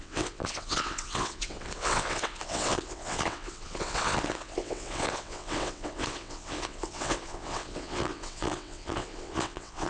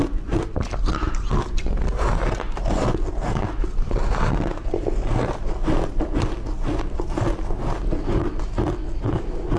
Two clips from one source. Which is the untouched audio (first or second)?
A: second